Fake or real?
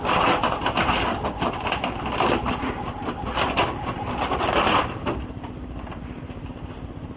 real